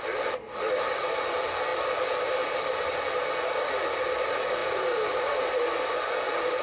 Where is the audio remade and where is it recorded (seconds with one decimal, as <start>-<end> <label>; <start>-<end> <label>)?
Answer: 0.0-4.6 recorded; 4.6-5.7 remade; 5.7-6.6 recorded